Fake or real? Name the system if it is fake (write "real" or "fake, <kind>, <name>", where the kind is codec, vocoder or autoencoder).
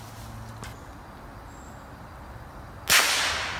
real